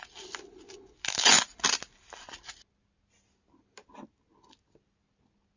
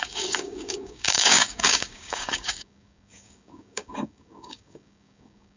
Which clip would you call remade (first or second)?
second